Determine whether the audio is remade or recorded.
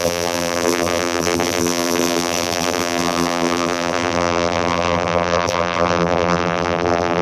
remade